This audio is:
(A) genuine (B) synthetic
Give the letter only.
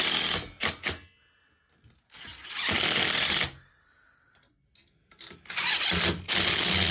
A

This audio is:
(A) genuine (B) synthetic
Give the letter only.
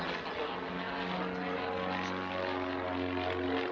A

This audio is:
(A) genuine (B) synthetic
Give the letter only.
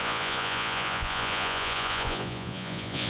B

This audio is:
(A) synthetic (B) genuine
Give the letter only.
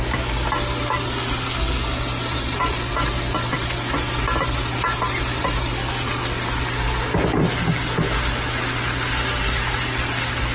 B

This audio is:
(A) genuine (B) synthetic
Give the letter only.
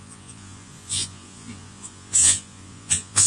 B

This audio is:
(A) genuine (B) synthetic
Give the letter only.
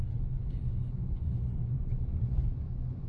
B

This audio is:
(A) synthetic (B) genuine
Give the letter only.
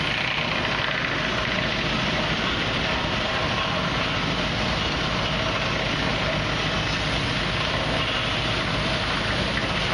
B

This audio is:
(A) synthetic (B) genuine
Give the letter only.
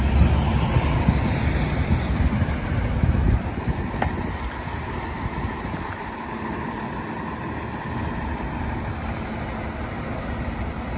B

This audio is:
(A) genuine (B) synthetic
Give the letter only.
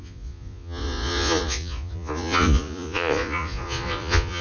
B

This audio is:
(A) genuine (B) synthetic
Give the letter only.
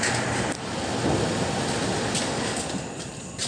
A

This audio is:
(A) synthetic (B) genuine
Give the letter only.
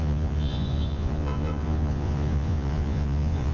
A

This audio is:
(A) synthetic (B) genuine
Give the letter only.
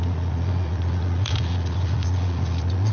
A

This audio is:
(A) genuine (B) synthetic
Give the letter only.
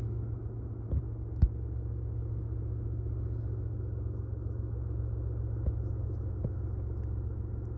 A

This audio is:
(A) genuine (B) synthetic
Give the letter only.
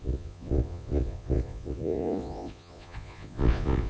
B